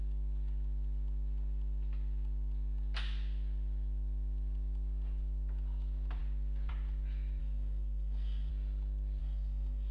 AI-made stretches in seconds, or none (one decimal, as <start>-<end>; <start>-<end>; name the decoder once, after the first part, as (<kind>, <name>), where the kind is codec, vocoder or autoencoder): 7.4-8.5 (codec, SNAC); 9.2-9.9